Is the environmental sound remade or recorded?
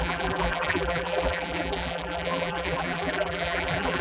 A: remade